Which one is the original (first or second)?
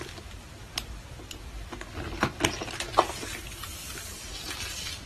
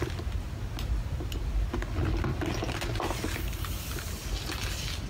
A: second